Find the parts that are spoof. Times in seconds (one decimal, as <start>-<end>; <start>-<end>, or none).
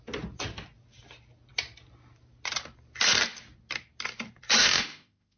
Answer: 4.6-5.4